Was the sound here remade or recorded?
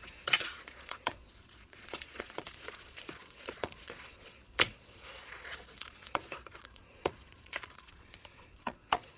remade